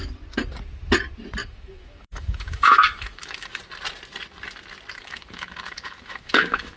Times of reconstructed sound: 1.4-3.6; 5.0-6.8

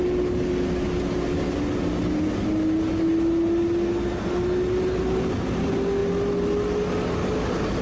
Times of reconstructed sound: none

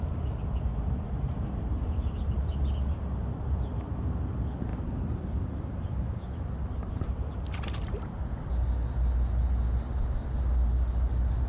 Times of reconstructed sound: none

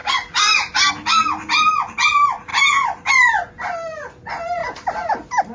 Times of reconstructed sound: 0.0-0.9; 2.5-3.1